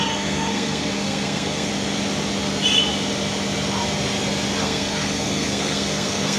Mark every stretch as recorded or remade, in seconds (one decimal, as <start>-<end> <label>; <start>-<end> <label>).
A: 0.0-1.7 remade; 1.7-4.6 recorded; 4.6-6.4 remade